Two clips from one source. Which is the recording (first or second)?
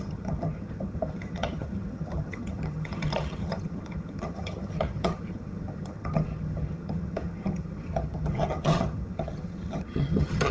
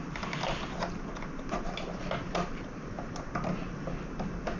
second